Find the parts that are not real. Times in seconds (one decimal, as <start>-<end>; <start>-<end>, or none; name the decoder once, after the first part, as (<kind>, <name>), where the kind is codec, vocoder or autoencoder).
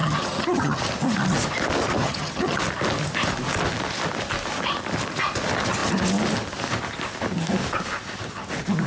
0.0-0.8 (vocoder, HiFi-GAN); 2.0-2.6